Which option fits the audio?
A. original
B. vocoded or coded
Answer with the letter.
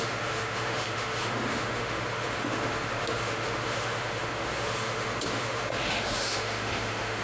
B